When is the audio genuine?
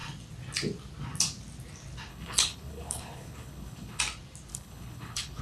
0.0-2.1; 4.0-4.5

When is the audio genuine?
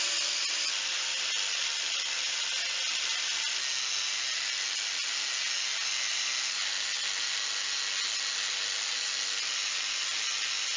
0.0-10.8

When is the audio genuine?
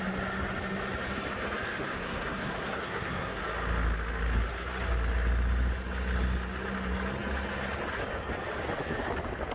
0.0-1.9; 3.4-9.5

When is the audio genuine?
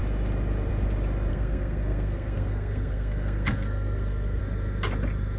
0.0-1.3; 4.4-5.4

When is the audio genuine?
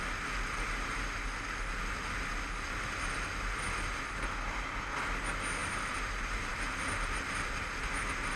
0.0-5.6; 6.8-8.4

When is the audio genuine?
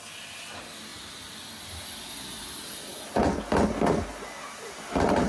0.0-5.3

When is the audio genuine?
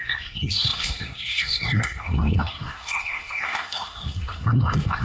none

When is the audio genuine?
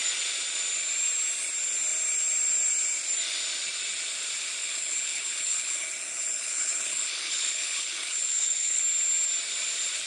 0.0-4.6; 8.8-10.1